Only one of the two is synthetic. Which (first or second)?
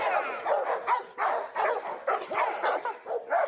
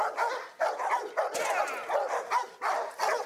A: second